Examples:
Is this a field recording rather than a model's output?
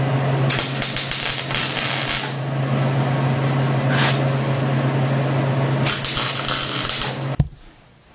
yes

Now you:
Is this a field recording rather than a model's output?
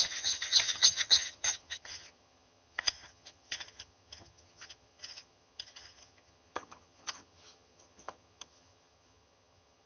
no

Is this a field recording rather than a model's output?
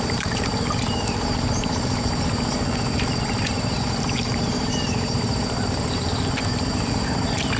no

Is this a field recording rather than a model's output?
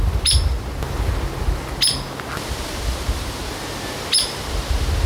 yes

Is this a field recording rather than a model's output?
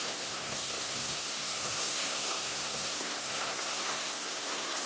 no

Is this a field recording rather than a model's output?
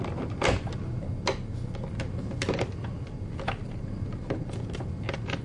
yes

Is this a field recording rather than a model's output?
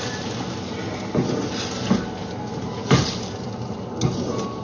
yes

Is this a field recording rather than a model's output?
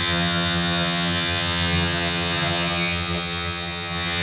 no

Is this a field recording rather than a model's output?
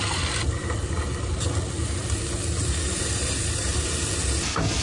yes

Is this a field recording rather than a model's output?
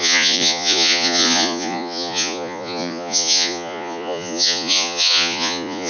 no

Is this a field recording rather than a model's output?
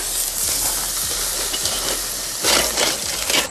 yes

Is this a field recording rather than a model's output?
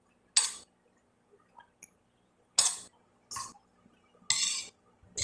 yes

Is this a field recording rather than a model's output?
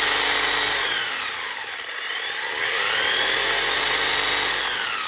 yes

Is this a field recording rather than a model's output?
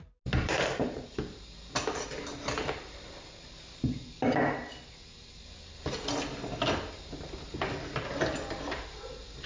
yes